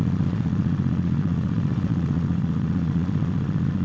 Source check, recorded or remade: remade